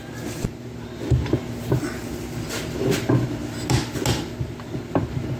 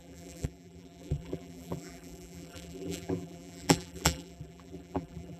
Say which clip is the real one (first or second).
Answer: first